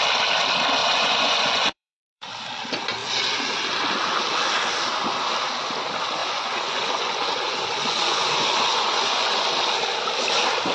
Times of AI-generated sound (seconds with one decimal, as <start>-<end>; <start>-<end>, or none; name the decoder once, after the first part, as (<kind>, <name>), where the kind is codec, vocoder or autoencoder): 0.8-2.3 (vocoder, Vocos); 6.2-9.5

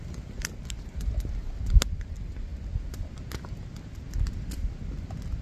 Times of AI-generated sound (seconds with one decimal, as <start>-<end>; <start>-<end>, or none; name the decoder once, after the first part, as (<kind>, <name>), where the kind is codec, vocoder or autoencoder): none

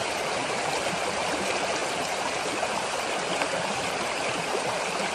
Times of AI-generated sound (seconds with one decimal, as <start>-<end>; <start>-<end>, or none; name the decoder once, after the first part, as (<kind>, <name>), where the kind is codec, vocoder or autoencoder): 0.0-5.1 (vocoder, BigVGAN v2)

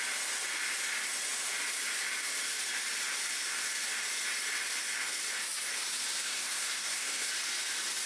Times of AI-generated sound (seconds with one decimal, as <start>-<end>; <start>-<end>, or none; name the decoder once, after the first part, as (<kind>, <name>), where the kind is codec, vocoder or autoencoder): 6.2-7.3 (codec, SNAC)

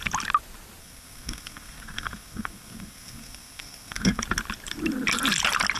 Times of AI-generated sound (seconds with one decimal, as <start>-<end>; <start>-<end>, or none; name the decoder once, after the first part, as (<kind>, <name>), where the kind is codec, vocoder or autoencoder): 0.8-4.2 (codec, SNAC)

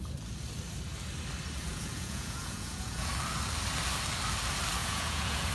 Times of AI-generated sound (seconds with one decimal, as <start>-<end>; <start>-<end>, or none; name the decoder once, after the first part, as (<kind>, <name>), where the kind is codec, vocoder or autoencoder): 1.7-3.1 (vocoder, Vocos); 4.8-5.5

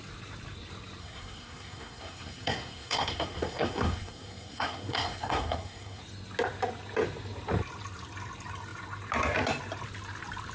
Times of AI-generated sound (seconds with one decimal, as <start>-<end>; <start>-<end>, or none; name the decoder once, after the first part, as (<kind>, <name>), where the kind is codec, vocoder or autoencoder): 1.0-6.0 (codec, SNAC)